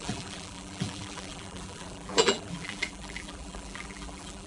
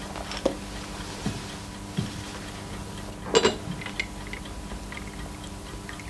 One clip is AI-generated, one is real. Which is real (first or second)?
second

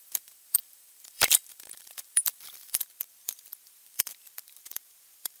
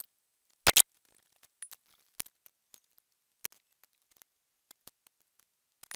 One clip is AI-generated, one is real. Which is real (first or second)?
second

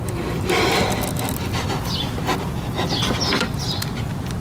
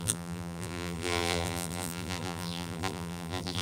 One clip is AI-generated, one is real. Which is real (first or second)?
first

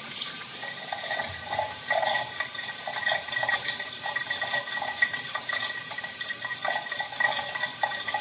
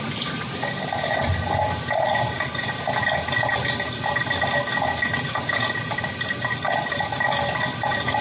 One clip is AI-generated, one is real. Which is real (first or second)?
second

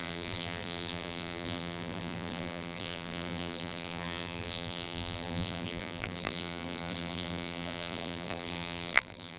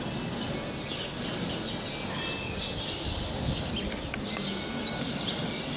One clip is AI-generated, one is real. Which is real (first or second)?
second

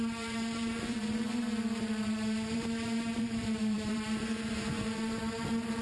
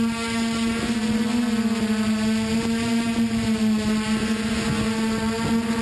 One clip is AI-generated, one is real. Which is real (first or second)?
second